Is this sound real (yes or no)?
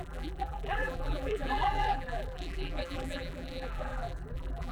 no